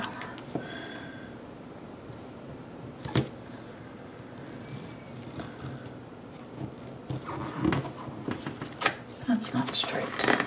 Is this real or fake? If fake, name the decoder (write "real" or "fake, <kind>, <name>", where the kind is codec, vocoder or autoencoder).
real